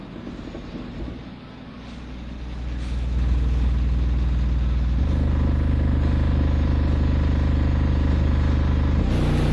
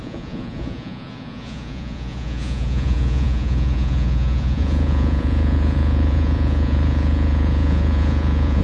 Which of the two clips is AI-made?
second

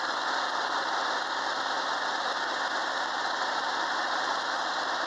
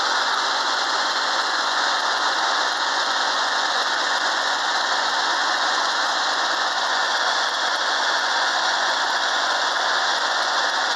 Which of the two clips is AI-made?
second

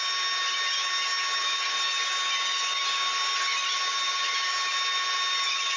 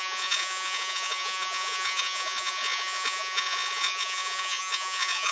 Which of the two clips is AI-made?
second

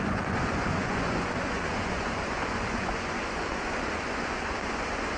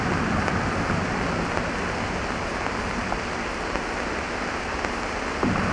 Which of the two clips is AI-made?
first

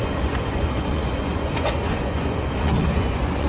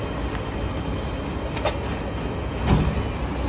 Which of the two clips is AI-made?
first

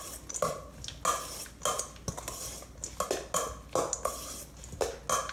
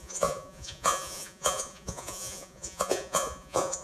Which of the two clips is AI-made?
second